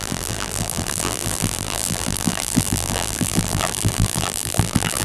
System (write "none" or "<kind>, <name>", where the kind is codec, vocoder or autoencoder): vocoder, BigVGAN v2